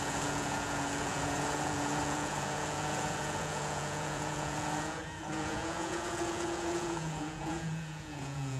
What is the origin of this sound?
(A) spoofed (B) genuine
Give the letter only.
A